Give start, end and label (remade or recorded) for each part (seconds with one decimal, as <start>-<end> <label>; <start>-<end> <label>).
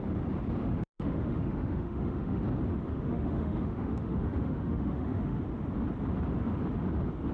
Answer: 0.0-0.6 recorded; 0.6-2.4 remade; 2.4-2.9 recorded; 2.9-5.4 remade; 5.4-7.3 recorded